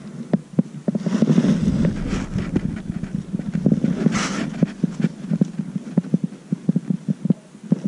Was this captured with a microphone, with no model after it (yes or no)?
yes